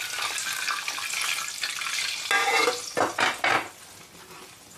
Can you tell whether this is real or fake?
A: real